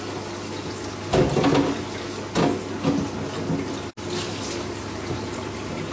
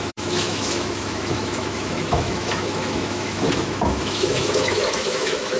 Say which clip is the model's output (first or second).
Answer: second